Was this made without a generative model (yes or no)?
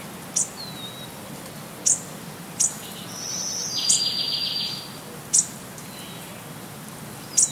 yes